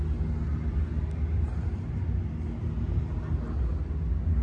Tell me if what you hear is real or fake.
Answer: real